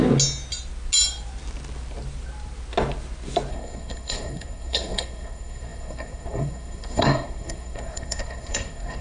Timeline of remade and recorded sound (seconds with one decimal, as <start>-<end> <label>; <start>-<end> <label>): 0.0-3.5 recorded; 3.5-9.0 remade